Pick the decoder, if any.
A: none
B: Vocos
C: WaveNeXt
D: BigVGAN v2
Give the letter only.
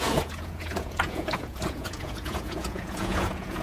B